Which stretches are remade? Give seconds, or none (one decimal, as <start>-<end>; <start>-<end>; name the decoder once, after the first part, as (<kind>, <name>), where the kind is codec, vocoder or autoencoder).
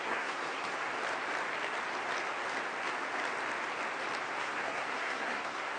0.0-0.9 (codec, SNAC); 4.4-5.8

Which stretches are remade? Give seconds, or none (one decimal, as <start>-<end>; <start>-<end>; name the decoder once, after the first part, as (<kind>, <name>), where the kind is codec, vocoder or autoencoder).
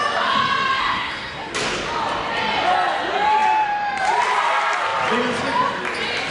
0.8-1.5 (codec, SNAC)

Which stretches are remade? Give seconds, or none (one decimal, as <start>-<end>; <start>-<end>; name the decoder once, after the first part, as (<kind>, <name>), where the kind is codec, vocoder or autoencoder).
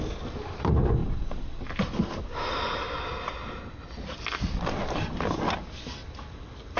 none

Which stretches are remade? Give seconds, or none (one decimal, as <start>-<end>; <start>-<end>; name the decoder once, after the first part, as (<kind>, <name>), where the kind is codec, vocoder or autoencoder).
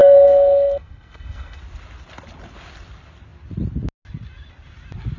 0.0-1.6 (codec, SNAC)